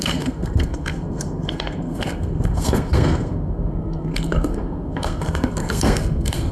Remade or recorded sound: remade